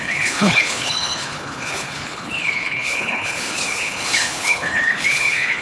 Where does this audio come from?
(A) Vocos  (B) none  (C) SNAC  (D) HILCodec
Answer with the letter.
D